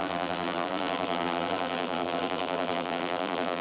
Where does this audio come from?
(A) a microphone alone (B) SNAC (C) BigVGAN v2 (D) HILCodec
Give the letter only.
C